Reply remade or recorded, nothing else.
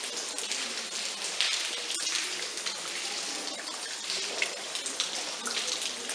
recorded